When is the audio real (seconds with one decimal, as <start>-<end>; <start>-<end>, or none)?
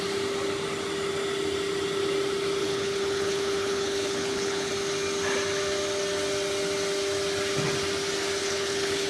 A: 0.0-2.6; 4.7-8.4